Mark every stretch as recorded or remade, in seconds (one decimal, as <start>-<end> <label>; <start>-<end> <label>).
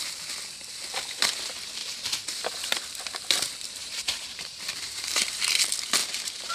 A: 0.0-1.8 recorded; 1.8-3.0 remade; 3.0-3.8 recorded; 3.8-5.6 remade; 5.6-6.0 recorded; 6.0-6.5 remade